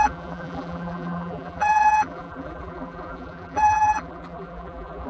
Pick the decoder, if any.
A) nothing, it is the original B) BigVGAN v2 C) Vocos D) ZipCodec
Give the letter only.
B